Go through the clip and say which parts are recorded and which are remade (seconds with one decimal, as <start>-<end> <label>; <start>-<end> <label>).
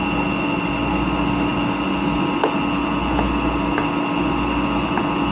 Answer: 0.0-5.3 recorded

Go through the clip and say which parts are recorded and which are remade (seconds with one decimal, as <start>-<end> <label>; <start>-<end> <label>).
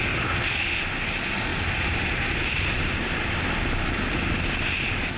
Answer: 0.0-1.5 recorded; 1.5-3.5 remade; 3.5-5.2 recorded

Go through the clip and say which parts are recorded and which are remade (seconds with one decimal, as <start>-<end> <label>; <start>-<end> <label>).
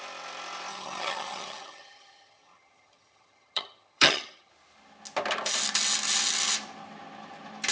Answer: 0.0-0.7 recorded; 0.7-4.5 remade; 4.5-7.7 recorded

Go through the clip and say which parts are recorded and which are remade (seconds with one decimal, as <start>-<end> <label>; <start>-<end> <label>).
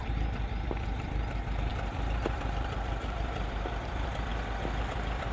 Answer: 0.0-4.3 remade; 4.3-4.8 recorded; 4.8-5.3 remade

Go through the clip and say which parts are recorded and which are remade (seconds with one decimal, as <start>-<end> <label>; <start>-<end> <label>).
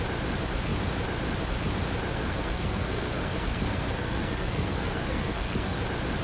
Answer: 0.0-2.1 recorded; 2.1-5.8 remade; 5.8-6.2 recorded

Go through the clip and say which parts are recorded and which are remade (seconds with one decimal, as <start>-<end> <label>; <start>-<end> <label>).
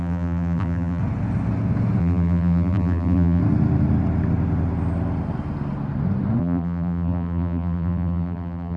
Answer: 0.0-1.0 remade; 1.0-2.0 recorded; 2.0-3.4 remade; 3.4-6.4 recorded; 6.4-8.8 remade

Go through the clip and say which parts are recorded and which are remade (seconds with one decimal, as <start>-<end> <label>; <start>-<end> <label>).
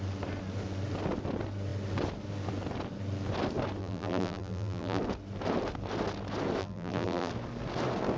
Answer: 0.0-3.8 recorded; 3.8-5.0 remade; 5.0-6.6 recorded; 6.6-7.3 remade; 7.3-8.2 recorded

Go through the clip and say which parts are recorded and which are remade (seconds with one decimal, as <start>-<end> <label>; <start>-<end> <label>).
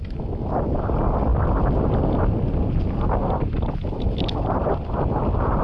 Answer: 0.0-5.6 recorded